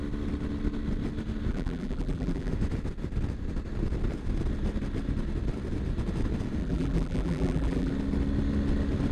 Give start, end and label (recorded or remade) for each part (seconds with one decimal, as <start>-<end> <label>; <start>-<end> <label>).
0.0-1.5 recorded; 1.5-2.5 remade; 2.5-6.6 recorded; 6.6-7.9 remade; 7.9-9.1 recorded